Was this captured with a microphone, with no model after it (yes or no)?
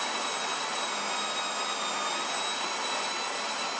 yes